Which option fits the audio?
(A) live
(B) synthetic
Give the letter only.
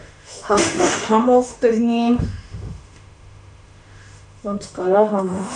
B